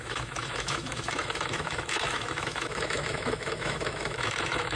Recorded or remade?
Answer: remade